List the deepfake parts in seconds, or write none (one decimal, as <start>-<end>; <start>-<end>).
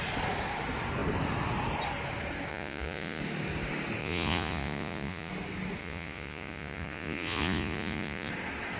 2.5-3.2; 4.0-5.3; 5.8-8.3